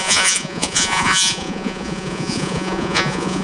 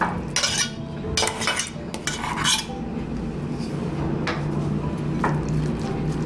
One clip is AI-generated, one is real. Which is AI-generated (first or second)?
first